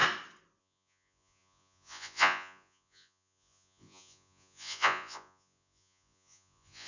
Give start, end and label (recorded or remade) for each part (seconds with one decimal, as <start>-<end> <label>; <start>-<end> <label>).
0.0-0.6 recorded; 0.6-6.9 remade